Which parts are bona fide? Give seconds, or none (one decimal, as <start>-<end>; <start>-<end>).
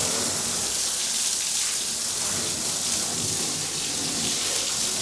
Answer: 0.0-5.0